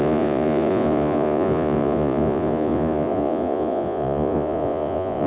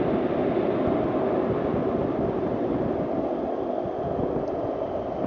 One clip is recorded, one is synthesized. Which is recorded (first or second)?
second